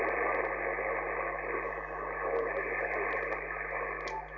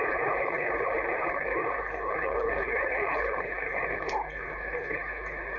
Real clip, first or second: first